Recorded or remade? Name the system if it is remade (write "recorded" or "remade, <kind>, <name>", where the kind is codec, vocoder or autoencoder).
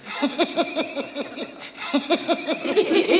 recorded